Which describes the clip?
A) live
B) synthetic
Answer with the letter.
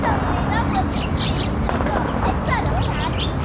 A